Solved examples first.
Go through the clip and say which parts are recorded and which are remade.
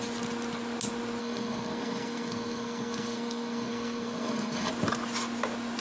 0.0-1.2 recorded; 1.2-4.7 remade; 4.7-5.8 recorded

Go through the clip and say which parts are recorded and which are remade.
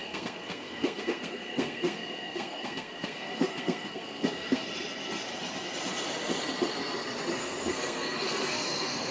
0.0-4.6 remade; 4.6-7.4 recorded; 7.4-9.1 remade